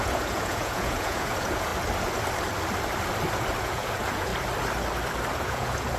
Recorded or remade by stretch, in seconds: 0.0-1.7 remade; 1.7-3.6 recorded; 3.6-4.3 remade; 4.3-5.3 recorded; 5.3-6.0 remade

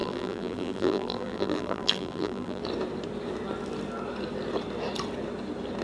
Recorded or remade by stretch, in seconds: 0.0-2.6 remade; 2.6-5.8 recorded

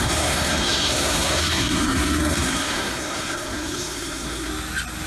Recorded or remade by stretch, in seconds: 0.0-4.5 remade; 4.5-5.1 recorded

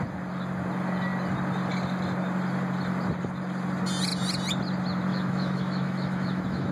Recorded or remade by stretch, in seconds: 0.0-5.1 recorded; 5.1-6.7 remade

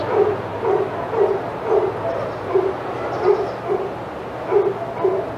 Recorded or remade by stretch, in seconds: 0.0-5.4 recorded

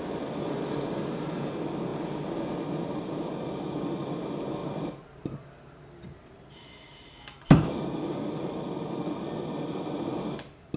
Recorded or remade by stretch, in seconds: 0.0-10.8 recorded

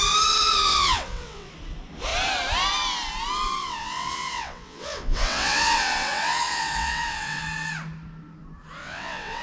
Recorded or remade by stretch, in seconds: 0.0-0.7 recorded; 0.7-1.5 remade; 1.5-3.6 recorded; 3.6-7.4 remade; 7.4-8.8 recorded; 8.8-9.4 remade